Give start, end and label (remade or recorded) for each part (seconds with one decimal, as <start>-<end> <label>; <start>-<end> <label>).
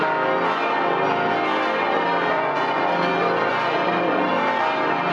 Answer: 0.0-2.3 recorded; 2.3-2.8 remade; 2.8-3.5 recorded; 3.5-4.3 remade; 4.3-5.1 recorded